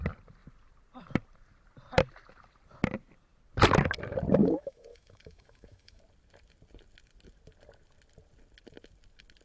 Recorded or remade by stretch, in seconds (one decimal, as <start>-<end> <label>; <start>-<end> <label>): 0.0-4.4 recorded; 4.4-6.0 remade; 6.0-9.4 recorded